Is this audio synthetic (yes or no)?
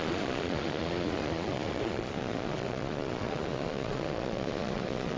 yes